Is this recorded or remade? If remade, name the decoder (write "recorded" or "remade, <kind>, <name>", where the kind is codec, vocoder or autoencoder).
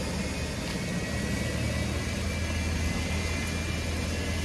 recorded